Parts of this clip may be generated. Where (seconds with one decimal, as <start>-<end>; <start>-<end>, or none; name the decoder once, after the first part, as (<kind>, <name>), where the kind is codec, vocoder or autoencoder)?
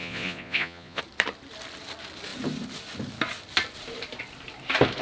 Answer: 0.0-1.0 (vocoder, Vocos)